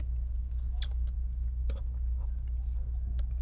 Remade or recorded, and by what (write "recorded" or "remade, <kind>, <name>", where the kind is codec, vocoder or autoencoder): recorded